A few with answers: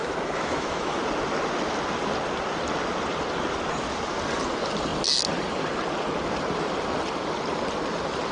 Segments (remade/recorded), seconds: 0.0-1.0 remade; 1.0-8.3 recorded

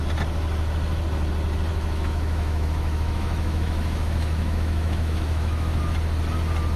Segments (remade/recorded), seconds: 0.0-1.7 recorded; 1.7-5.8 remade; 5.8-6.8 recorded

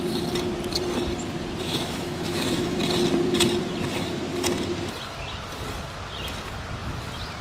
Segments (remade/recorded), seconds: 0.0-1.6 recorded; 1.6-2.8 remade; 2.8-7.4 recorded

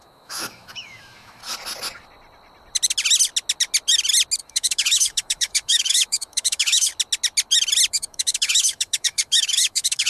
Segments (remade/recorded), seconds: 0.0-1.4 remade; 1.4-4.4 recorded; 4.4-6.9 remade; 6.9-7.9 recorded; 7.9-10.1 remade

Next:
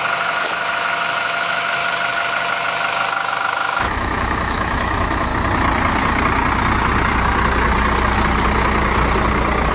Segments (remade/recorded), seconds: 0.0-1.8 remade; 1.8-3.3 recorded; 3.3-5.3 remade; 5.3-9.7 recorded

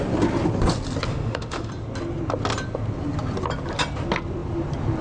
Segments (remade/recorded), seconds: 0.0-1.1 recorded; 1.1-1.7 remade; 1.7-5.0 recorded